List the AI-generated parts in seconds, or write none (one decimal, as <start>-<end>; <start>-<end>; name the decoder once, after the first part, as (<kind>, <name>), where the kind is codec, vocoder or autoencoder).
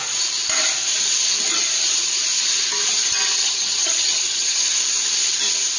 3.4-4.6 (vocoder, HiFi-GAN)